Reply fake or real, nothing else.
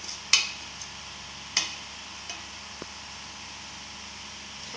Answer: real